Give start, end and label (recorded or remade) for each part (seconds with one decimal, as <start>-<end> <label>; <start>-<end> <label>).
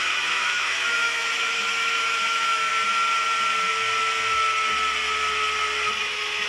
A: 0.0-2.7 remade; 2.7-6.0 recorded; 6.0-6.5 remade